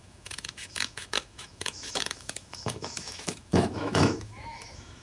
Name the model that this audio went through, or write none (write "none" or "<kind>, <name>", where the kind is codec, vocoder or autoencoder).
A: autoencoder, DAC-VAE